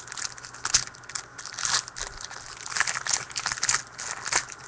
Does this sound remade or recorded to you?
recorded